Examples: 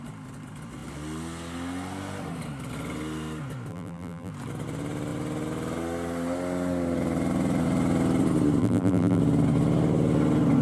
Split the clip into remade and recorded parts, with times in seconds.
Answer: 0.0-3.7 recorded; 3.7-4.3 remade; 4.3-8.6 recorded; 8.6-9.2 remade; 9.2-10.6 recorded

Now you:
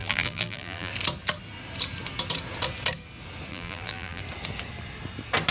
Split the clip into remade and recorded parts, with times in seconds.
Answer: 0.0-0.9 remade; 0.9-3.5 recorded; 3.5-4.2 remade; 4.2-5.5 recorded